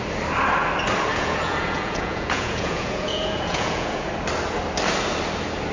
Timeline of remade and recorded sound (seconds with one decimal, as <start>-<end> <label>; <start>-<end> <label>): 0.0-1.1 recorded; 1.1-4.1 remade; 4.1-5.7 recorded